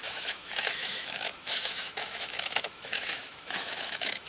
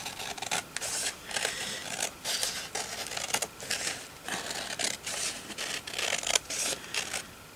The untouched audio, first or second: second